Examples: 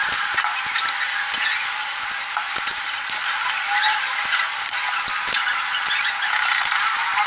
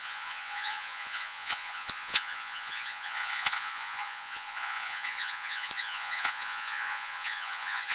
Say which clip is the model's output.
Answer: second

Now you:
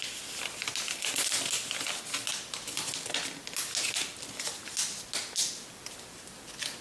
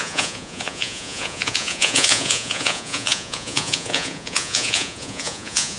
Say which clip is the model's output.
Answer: second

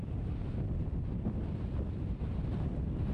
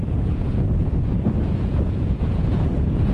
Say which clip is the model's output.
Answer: second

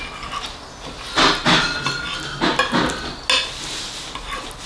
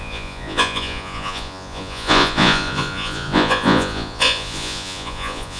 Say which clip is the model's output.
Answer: second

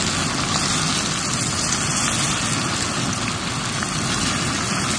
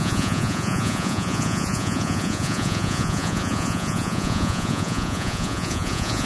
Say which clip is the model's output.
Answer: second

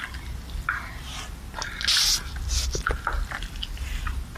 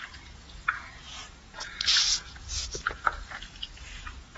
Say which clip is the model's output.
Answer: second